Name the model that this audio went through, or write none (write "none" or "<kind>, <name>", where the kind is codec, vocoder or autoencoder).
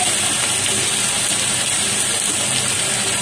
none